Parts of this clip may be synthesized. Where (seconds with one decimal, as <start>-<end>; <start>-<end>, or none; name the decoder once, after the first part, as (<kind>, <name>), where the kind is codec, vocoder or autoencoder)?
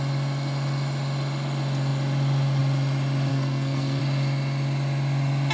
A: 3.3-4.0 (codec, SNAC)